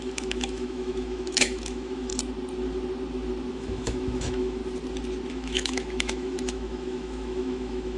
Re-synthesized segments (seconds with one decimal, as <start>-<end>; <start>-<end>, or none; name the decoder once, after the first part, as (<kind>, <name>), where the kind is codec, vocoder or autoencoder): 0.0-2.1 (autoencoder, DAC-VAE); 3.5-4.6; 5.3-8.0